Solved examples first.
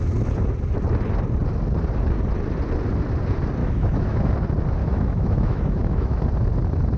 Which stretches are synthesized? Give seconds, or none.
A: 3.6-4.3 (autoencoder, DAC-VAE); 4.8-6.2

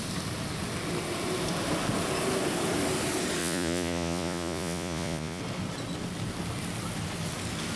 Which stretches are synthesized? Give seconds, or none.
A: 3.4-5.4 (vocoder, Vocos)

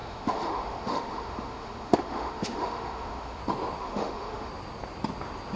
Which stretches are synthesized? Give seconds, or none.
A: 0.0-3.4 (autoencoder, DAC-VAE); 3.8-4.5

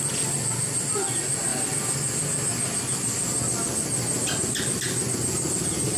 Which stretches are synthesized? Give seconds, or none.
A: none